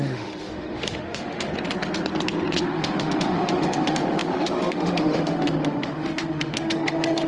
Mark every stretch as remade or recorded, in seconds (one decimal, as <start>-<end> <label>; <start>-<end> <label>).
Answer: 0.0-1.5 remade; 1.5-2.6 recorded; 2.6-7.3 remade